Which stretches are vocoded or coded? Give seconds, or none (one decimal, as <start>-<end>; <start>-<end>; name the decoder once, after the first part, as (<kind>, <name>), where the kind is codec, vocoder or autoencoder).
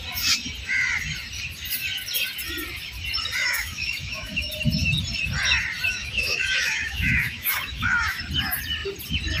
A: 3.4-4.5 (autoencoder, DAC-VAE); 5.9-8.2